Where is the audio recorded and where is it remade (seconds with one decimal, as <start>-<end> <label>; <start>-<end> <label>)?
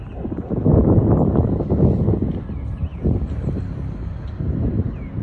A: 0.0-2.9 recorded; 2.9-4.3 remade; 4.3-5.2 recorded